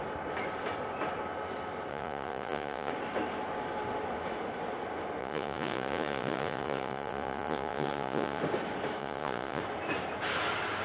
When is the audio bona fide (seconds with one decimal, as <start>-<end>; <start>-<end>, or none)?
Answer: 0.0-1.9; 2.9-5.2; 8.4-9.0; 9.6-10.8